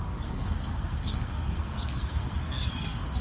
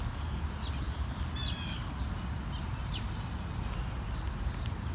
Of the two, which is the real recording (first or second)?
second